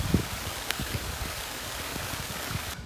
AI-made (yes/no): yes